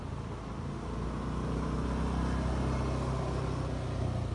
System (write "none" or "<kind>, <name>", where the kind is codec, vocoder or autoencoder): none